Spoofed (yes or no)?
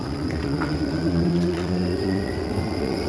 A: yes